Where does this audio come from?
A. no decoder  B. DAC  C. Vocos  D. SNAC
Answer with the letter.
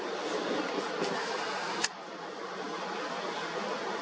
A